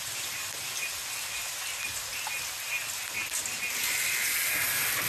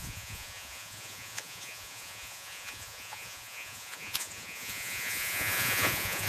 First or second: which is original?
first